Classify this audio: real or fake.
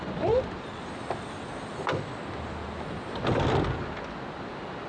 real